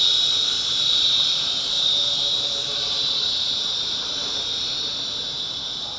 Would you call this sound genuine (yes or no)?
no